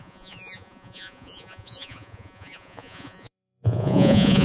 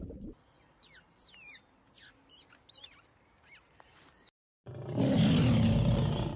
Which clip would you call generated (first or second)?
first